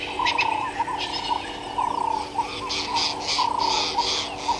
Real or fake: real